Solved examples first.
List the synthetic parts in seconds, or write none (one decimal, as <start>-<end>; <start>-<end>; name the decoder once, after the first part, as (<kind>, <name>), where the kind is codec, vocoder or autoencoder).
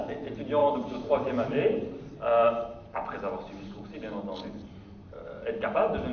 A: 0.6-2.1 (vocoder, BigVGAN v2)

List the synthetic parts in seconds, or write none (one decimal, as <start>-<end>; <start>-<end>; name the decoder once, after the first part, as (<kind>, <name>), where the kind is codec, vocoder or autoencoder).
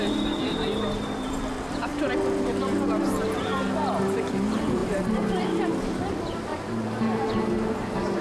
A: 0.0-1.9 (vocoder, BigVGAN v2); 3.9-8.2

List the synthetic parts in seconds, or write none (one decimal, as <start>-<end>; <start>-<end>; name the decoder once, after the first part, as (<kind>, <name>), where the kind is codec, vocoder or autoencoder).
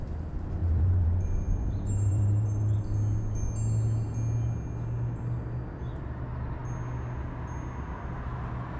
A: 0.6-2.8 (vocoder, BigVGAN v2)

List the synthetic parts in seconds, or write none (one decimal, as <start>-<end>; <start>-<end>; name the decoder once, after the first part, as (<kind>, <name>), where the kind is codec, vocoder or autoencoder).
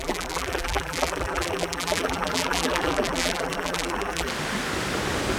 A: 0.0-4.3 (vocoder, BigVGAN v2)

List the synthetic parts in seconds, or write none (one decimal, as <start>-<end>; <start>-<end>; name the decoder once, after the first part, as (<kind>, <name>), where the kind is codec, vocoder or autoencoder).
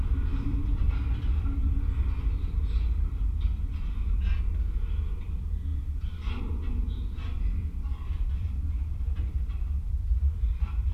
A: 0.5-1.6 (vocoder, BigVGAN v2); 5.7-6.4; 7.6-10.9